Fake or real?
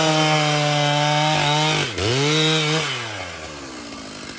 real